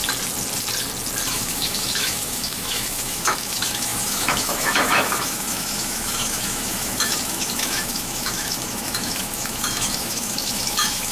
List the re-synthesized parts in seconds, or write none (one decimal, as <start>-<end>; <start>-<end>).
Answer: 1.3-11.1